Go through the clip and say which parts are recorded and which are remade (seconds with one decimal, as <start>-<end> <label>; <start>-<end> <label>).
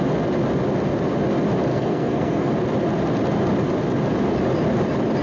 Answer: 0.0-1.7 recorded; 1.7-2.5 remade; 2.5-5.2 recorded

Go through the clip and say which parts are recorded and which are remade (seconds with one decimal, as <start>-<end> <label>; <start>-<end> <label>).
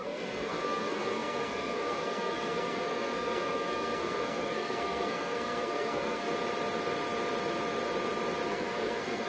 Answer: 0.0-6.3 remade; 6.3-8.5 recorded; 8.5-9.3 remade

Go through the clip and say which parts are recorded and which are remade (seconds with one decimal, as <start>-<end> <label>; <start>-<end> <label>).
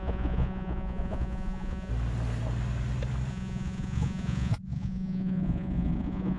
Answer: 0.0-1.9 remade; 1.9-3.3 recorded; 3.3-6.4 remade